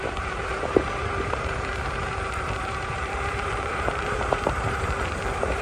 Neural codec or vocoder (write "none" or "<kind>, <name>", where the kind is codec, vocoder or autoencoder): vocoder, BigVGAN v2